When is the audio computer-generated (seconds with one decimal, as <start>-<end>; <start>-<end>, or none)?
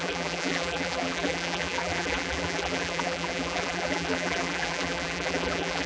0.0-5.9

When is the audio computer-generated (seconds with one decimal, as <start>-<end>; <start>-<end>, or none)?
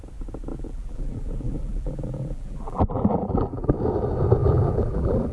0.5-3.7; 4.4-5.3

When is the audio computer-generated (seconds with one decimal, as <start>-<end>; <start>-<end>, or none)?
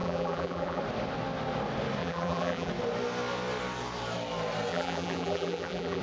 0.0-0.8; 2.0-2.7; 4.7-6.0